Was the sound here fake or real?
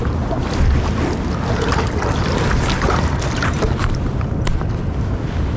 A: real